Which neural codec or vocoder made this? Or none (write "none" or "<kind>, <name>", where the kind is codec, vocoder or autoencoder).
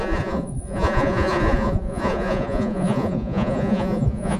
vocoder, Vocos